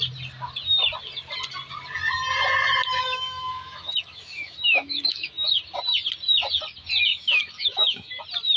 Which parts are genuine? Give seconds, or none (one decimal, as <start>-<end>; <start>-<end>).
0.0-3.0; 5.6-7.1; 8.2-8.6